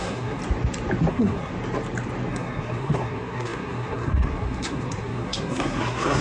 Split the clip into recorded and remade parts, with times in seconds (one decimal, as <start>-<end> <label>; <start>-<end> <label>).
0.0-0.4 remade; 0.4-1.1 recorded; 1.1-1.5 remade; 1.5-2.3 recorded; 2.3-6.2 remade